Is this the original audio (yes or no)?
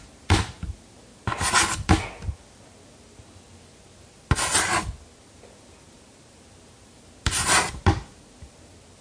yes